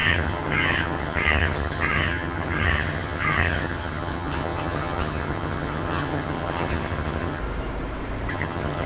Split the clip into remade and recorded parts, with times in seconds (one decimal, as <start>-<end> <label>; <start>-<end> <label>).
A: 0.0-7.4 remade; 7.4-8.3 recorded; 8.3-8.9 remade